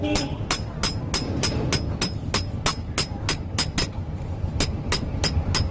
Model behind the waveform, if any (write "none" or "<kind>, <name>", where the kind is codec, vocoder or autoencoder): none